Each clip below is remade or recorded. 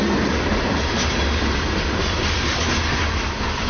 recorded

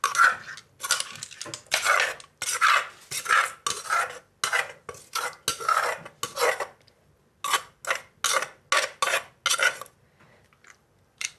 recorded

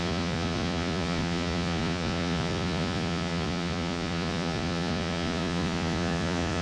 remade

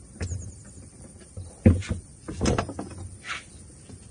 recorded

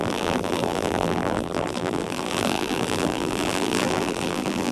remade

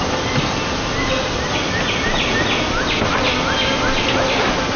recorded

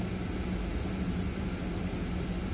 recorded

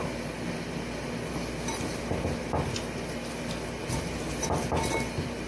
recorded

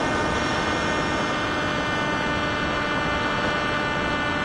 recorded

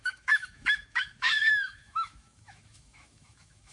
remade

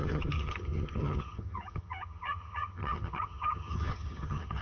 remade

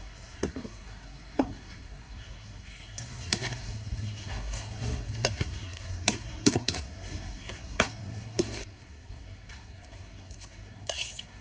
remade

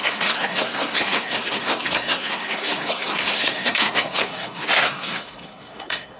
remade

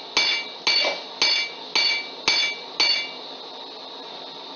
recorded